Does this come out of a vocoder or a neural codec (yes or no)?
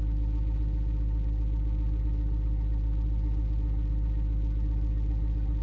yes